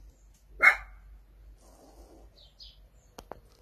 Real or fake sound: real